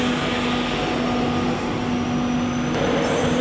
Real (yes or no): yes